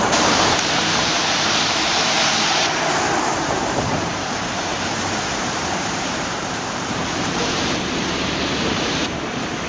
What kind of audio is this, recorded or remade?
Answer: remade